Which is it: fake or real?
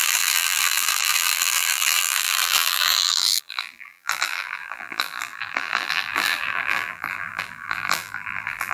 fake